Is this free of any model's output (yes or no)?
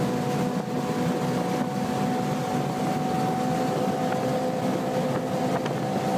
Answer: yes